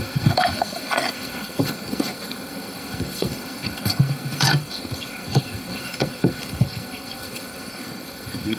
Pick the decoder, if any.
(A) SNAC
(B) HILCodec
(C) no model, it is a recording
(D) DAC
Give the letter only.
A